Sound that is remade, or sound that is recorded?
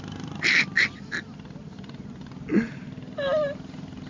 recorded